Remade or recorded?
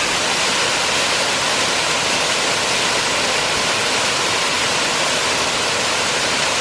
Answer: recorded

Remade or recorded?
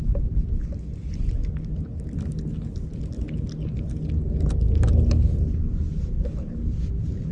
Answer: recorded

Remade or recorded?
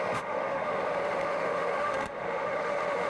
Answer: remade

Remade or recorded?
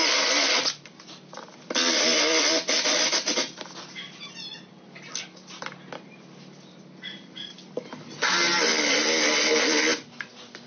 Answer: recorded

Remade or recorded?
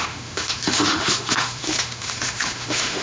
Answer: remade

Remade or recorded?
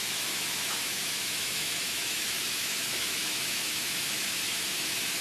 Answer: remade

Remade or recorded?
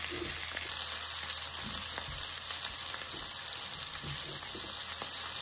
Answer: recorded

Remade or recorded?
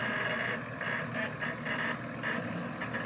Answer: recorded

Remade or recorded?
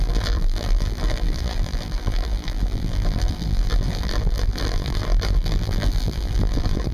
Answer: remade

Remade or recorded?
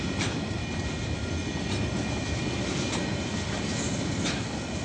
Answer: recorded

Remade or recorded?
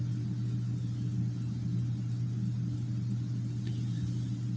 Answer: recorded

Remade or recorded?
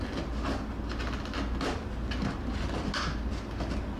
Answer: recorded